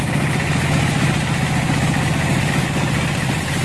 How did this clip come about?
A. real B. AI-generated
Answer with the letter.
A